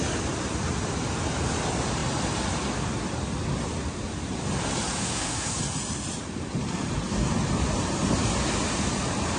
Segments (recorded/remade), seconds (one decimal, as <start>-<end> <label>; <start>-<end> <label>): 0.0-5.0 recorded; 5.0-5.6 remade; 5.6-9.4 recorded